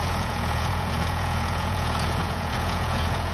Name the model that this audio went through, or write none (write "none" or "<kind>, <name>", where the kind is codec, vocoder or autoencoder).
vocoder, Vocos